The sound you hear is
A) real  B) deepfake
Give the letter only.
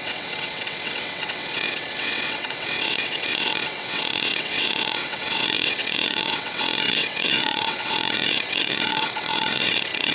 B